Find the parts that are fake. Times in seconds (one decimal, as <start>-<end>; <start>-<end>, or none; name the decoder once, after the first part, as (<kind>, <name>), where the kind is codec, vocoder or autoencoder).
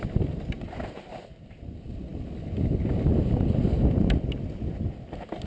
none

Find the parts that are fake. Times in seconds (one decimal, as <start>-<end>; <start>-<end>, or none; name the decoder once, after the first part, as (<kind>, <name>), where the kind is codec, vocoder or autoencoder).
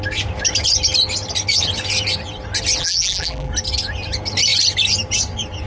2.8-3.5 (vocoder, BigVGAN v2)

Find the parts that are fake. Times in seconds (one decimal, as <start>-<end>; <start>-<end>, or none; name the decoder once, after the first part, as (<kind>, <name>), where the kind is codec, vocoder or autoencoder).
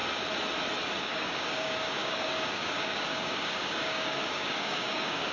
1.0-5.3 (codec, DAC)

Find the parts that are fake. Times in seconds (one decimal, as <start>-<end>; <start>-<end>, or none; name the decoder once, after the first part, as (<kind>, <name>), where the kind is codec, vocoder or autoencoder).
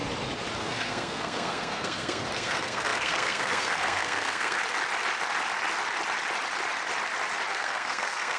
0.6-4.6 (codec, SNAC); 7.5-8.4